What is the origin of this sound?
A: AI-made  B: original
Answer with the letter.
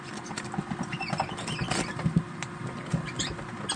B